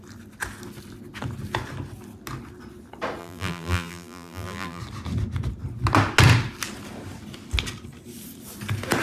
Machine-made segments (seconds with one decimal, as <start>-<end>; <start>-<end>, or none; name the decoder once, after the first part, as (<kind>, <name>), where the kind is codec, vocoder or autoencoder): 3.2-4.8 (vocoder, BigVGAN v2)